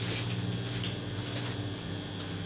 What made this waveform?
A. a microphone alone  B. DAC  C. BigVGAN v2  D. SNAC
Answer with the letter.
A